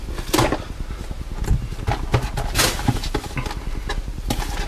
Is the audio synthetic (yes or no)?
no